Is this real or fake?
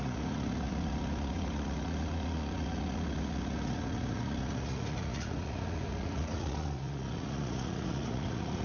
fake